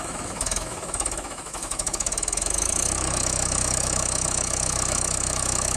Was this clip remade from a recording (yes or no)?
yes